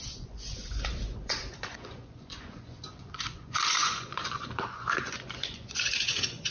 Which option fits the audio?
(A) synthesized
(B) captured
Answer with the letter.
A